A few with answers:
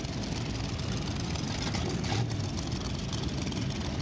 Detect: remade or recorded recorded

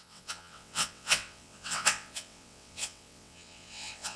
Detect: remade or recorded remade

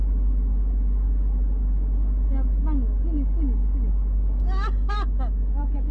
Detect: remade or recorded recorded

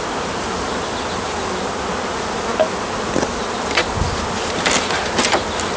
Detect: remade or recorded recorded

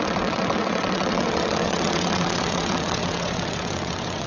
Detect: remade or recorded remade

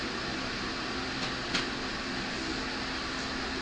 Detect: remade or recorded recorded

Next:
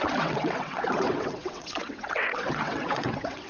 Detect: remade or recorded remade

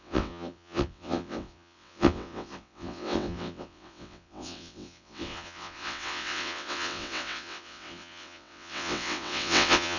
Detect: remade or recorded remade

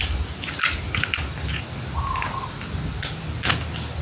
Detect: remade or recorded recorded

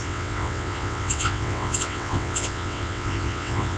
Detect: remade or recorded remade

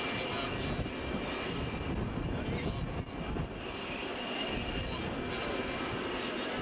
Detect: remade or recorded recorded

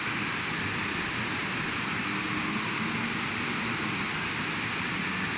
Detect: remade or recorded recorded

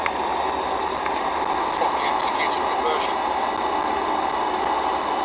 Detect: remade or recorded recorded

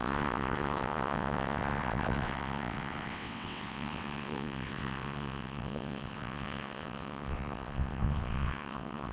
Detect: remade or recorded remade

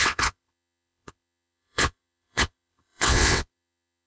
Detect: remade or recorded remade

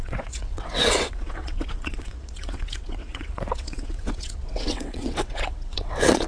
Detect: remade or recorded remade